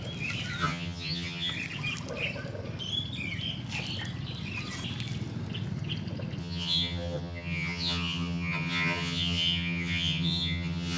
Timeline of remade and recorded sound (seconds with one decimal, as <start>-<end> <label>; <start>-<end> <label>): 0.0-0.6 recorded; 0.6-1.5 remade; 1.5-6.4 recorded; 6.4-11.0 remade